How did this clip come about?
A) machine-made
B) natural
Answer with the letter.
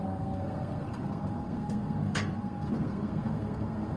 A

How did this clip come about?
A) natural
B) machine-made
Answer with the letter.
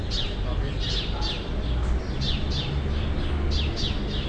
A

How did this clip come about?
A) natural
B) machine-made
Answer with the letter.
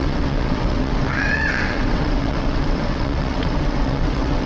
B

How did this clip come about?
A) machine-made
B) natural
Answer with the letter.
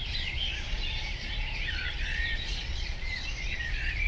A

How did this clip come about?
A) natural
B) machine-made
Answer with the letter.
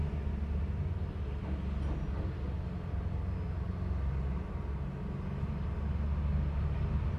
A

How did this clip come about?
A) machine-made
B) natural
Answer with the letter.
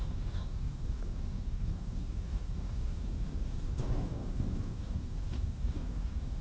A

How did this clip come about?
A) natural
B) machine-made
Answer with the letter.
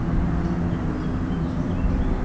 A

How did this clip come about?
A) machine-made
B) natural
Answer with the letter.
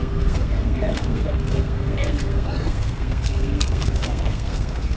A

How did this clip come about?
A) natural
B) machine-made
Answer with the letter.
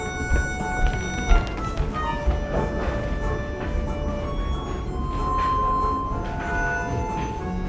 A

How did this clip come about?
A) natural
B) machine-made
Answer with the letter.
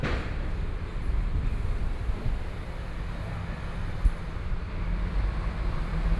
A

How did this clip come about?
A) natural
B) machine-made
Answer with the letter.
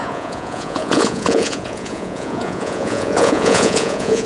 B